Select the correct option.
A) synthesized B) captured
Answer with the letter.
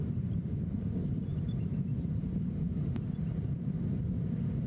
A